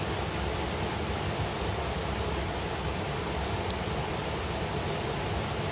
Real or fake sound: real